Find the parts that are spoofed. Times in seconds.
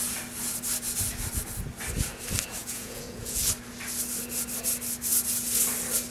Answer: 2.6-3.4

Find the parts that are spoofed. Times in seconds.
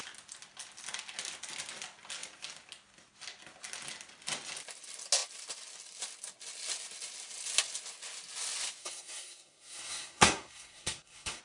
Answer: 8.8-11.4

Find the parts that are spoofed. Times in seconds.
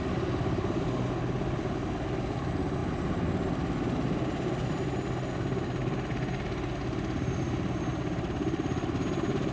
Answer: none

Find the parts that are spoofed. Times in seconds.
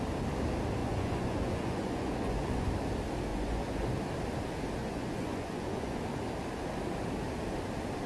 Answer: 0.8-2.7; 3.3-3.9; 4.8-6.0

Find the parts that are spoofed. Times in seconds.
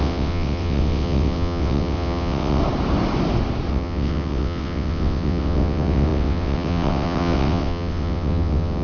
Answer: 0.0-2.6; 3.7-8.8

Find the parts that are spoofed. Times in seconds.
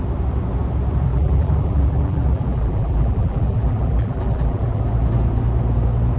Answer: 1.1-4.8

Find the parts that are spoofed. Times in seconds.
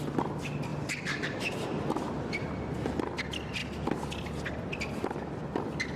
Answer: none